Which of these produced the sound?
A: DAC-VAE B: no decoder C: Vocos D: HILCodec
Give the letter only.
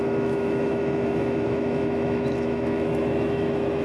A